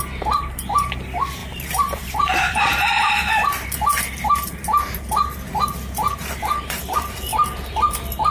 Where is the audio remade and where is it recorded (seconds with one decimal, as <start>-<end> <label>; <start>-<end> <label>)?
0.0-1.4 recorded; 1.4-3.3 remade; 3.3-6.2 recorded; 6.2-6.8 remade; 6.8-8.3 recorded